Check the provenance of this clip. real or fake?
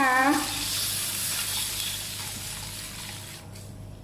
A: real